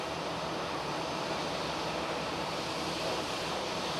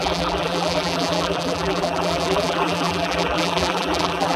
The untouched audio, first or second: first